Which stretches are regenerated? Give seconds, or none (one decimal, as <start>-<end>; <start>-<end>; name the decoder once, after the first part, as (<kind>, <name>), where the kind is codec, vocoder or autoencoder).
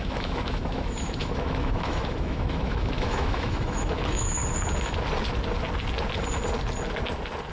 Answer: 0.0-4.4 (autoencoder, DAC-VAE)